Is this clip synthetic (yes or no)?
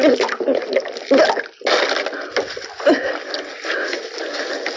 no